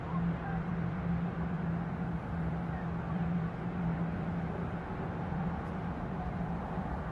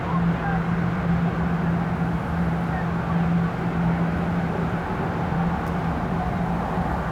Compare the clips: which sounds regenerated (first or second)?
first